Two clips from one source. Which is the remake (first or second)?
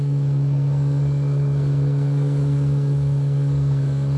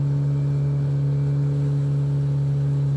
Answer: first